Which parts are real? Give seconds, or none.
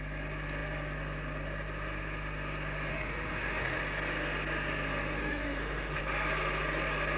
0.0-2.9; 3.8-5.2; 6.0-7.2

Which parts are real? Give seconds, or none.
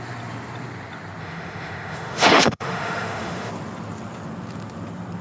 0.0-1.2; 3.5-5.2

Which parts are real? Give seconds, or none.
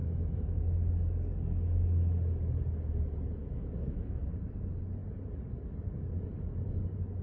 0.6-3.4; 4.2-7.2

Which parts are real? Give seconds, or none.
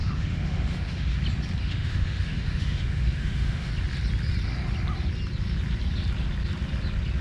1.2-1.6; 3.7-7.2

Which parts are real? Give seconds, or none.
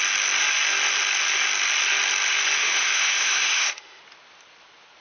0.0-2.6; 4.0-5.0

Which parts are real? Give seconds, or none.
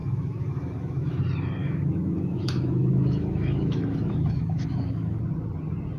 1.2-1.6; 5.2-6.0